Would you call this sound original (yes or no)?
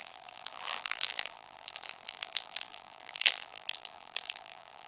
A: no